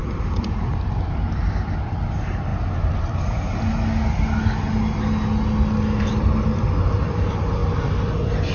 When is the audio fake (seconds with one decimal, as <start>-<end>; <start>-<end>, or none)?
0.0-2.5; 6.0-7.6